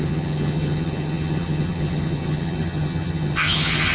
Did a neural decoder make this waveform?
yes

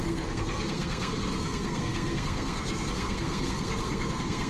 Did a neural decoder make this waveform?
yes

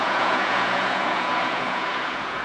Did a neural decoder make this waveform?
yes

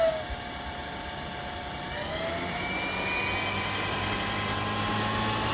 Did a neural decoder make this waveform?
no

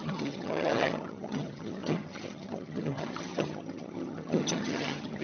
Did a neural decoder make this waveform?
yes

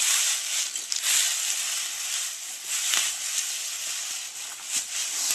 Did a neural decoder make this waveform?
no